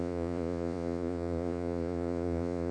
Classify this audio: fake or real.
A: fake